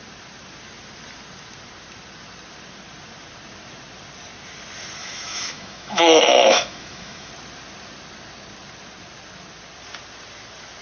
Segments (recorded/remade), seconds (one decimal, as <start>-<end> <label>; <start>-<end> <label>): 0.0-5.0 recorded; 5.0-7.3 remade; 7.3-10.8 recorded